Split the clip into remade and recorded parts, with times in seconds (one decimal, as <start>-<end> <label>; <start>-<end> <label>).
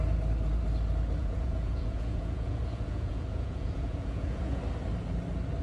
0.0-1.2 recorded; 1.2-4.6 remade; 4.6-5.6 recorded